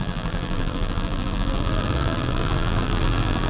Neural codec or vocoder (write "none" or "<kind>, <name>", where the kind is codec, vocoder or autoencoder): vocoder, BigVGAN v2